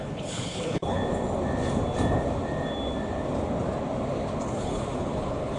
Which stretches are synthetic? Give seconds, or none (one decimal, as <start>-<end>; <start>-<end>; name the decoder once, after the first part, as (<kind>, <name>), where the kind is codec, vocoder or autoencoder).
0.0-1.0 (codec, HILCodec); 4.4-5.6